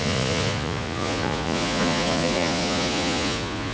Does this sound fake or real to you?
fake